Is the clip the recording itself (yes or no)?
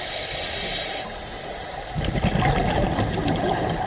yes